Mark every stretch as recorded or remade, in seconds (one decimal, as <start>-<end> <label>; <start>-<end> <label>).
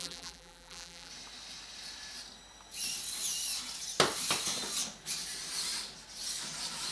0.0-1.1 remade; 1.1-6.9 recorded